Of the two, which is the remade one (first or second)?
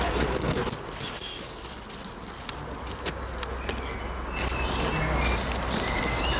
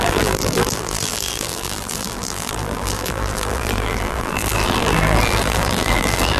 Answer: second